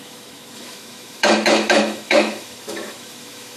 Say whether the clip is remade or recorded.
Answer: remade